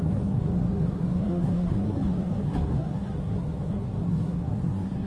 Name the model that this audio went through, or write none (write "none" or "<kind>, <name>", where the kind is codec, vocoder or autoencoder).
codec, SNAC